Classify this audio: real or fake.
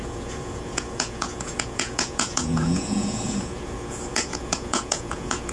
fake